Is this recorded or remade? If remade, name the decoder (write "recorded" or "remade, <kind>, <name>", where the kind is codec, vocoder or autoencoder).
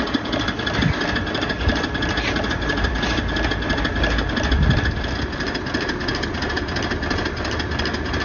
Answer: recorded